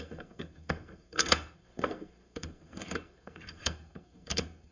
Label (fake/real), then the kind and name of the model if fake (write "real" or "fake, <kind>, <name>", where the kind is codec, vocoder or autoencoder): fake, codec, SNAC